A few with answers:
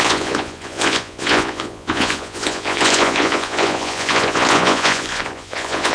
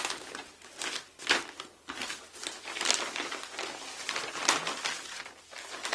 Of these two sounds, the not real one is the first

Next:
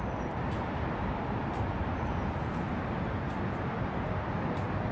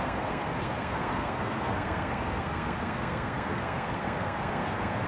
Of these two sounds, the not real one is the second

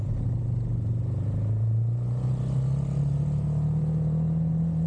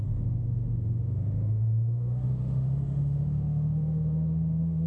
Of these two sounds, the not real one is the second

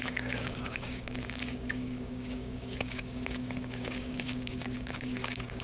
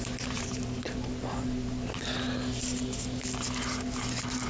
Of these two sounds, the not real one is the first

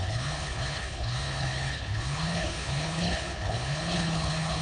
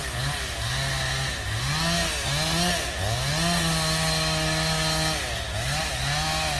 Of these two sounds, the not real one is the first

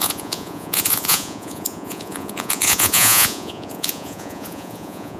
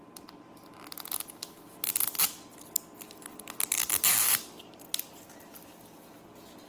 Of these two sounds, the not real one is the first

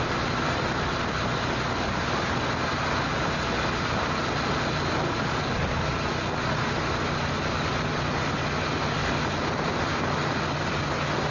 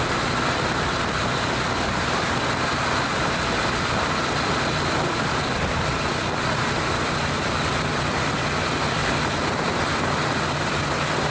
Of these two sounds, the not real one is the second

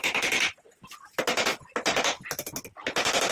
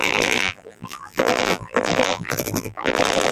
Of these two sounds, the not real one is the second